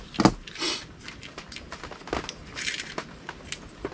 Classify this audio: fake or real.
real